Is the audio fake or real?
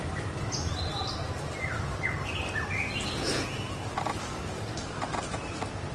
real